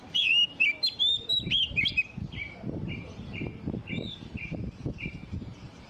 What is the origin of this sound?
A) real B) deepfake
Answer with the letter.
B